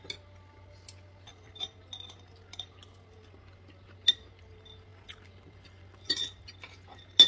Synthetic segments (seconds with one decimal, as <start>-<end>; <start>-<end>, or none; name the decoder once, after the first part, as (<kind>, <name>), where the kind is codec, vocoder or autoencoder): 1.3-1.8 (vocoder, BigVGAN v2); 4.9-6.4